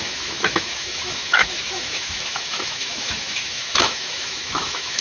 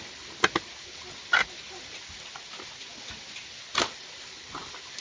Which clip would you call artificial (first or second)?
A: first